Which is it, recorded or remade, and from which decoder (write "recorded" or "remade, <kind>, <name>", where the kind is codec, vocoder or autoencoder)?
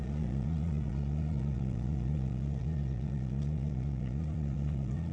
remade, vocoder, Vocos